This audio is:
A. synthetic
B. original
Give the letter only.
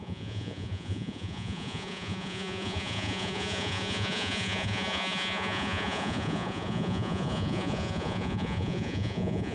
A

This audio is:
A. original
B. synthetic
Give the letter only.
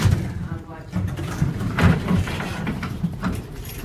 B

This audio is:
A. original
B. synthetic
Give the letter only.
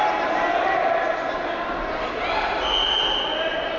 A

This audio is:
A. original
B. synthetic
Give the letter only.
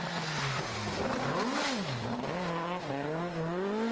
A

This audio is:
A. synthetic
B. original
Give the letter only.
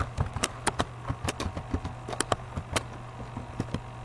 B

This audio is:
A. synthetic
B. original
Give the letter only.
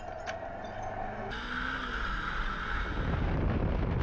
B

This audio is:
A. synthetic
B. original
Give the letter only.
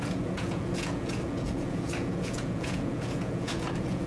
A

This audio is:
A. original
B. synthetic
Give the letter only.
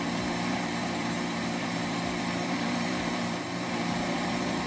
B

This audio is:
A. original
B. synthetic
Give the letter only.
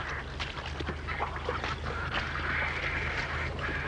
A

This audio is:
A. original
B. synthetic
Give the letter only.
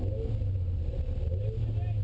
A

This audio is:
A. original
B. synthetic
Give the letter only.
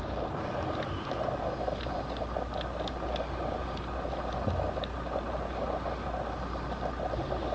A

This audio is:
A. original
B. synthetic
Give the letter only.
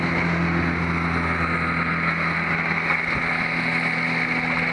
A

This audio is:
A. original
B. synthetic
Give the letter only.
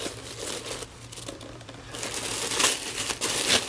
A